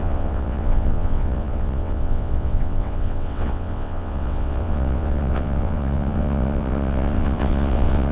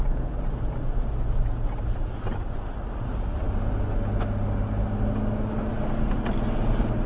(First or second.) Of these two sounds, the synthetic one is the first